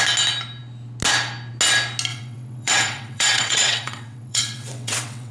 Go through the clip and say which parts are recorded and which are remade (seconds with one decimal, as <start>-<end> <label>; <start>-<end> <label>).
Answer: 0.0-2.1 recorded; 2.1-5.3 remade